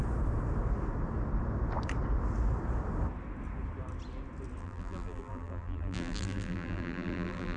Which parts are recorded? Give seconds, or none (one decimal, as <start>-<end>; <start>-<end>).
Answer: 0.0-4.6